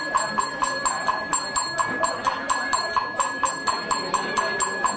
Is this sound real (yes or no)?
yes